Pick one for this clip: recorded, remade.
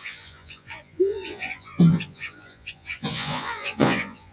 remade